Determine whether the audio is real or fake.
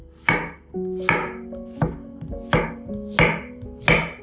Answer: real